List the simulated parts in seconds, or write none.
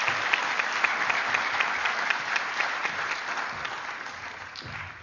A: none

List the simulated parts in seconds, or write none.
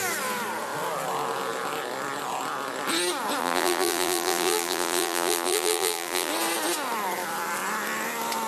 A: 3.4-6.3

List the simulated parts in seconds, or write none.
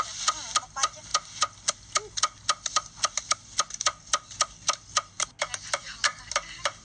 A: none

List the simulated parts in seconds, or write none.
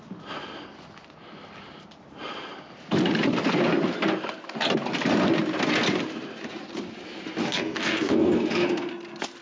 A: 7.4-9.0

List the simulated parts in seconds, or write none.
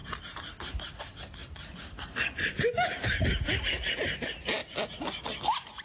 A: 1.0-4.6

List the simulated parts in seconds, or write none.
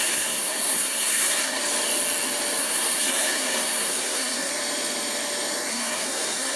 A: 0.0-1.6; 2.6-4.5; 5.7-6.6